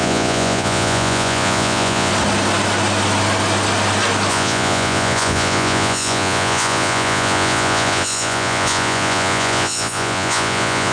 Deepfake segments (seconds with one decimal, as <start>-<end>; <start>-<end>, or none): 0.0-2.1; 4.3-10.9